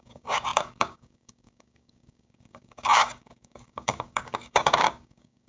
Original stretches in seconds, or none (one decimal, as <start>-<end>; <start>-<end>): none